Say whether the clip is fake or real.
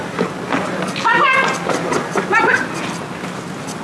real